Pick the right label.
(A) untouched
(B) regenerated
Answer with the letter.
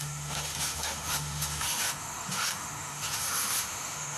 B